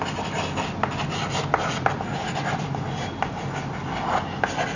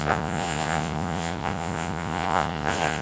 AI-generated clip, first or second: second